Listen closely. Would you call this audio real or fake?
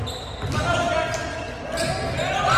real